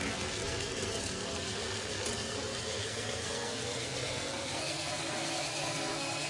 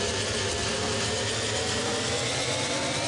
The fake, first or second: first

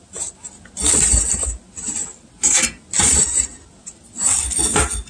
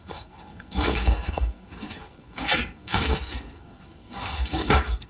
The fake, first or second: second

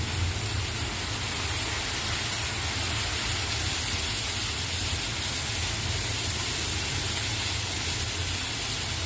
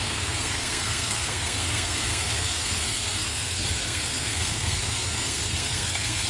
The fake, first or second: second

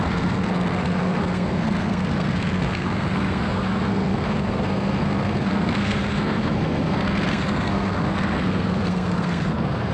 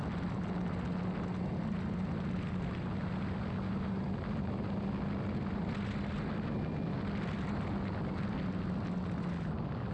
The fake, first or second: first